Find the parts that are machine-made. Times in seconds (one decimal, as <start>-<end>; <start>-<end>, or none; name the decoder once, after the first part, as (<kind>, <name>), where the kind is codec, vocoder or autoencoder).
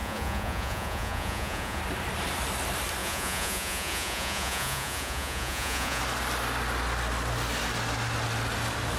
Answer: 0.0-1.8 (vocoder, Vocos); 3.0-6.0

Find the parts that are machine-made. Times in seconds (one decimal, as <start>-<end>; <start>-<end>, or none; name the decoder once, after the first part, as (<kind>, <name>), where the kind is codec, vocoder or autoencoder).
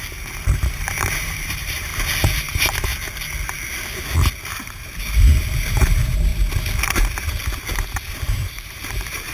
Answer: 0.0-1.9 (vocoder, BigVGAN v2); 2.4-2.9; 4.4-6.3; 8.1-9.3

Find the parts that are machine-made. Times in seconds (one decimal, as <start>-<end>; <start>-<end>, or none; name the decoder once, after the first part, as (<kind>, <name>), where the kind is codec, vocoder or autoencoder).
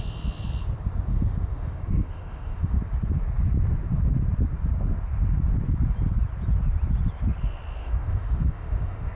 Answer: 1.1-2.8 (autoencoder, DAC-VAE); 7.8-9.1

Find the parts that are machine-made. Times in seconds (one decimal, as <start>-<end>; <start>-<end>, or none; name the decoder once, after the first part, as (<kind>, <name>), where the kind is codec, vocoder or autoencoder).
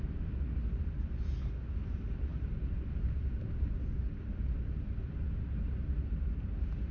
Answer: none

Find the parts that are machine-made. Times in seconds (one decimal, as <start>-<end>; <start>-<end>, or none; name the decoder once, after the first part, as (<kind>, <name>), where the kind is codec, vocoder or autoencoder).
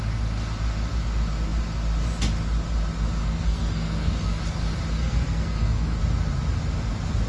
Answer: 3.2-4.4 (codec, SNAC); 5.0-6.0